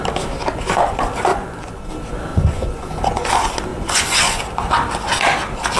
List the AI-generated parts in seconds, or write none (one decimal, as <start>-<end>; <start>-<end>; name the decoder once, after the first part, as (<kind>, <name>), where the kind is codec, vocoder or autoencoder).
1.3-1.9 (vocoder, Vocos); 2.3-3.3; 3.7-4.4